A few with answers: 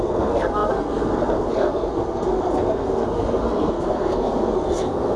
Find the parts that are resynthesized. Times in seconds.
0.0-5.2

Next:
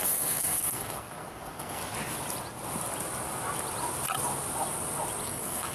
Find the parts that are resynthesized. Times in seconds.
0.0-1.8; 5.2-5.7

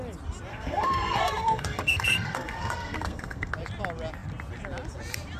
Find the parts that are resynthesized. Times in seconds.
0.5-3.5

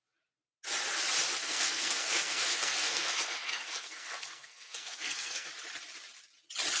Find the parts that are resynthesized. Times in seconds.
1.4-5.5

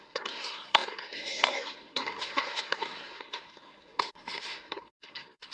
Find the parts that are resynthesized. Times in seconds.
0.0-5.5

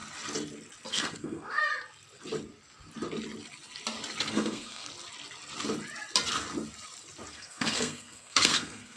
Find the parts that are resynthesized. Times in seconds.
0.9-1.7; 4.3-4.9; 7.3-9.0

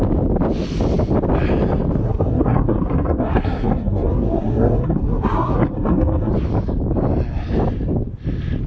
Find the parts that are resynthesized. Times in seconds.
2.0-6.3

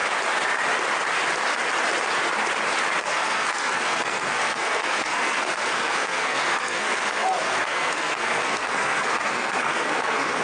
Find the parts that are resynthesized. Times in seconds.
3.0-10.4